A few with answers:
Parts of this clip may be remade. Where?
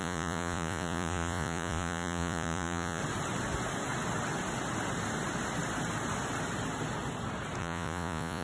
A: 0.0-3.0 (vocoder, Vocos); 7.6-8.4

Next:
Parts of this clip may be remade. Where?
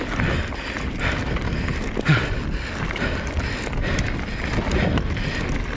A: none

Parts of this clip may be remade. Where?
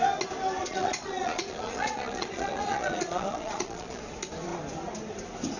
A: 0.6-4.0 (vocoder, Vocos)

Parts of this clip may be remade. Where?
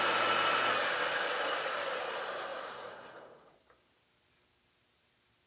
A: 2.5-3.6 (vocoder, Vocos)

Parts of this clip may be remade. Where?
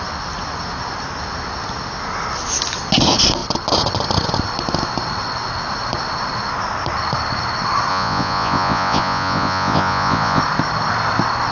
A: 7.9-10.4 (vocoder, Vocos)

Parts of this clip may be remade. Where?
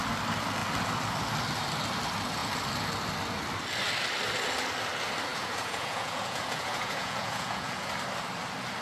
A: 5.3-7.9 (vocoder, Vocos)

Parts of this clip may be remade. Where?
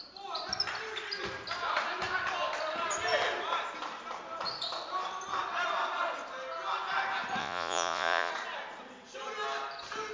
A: 7.4-8.3 (vocoder, Vocos)